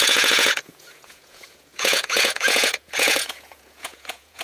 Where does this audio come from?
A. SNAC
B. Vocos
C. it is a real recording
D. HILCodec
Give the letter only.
B